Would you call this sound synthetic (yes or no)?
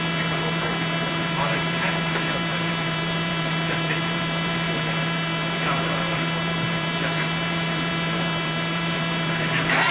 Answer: yes